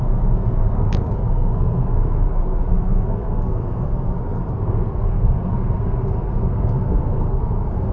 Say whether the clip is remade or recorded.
remade